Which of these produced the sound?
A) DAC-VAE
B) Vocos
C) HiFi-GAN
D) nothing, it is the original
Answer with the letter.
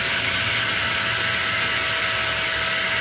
D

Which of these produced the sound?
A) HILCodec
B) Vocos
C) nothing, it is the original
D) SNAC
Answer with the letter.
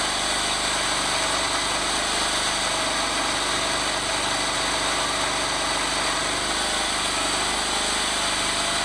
C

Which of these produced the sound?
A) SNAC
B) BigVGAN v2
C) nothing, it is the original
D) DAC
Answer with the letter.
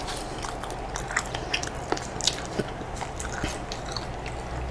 C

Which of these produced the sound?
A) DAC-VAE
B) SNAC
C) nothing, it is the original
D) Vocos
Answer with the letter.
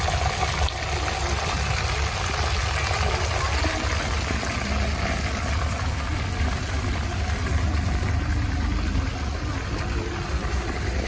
C